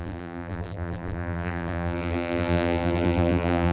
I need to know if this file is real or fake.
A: fake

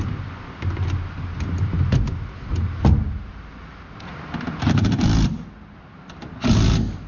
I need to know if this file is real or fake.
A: real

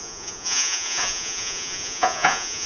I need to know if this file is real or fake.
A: fake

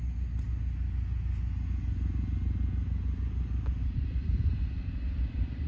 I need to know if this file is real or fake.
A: real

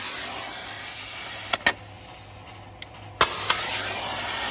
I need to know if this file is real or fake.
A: real